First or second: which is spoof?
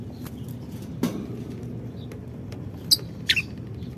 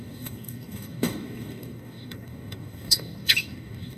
second